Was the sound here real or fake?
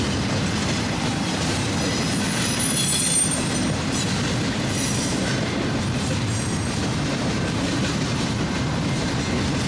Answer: fake